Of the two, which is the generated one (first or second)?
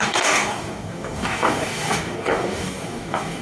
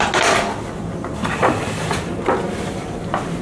first